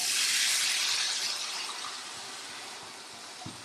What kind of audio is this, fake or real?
real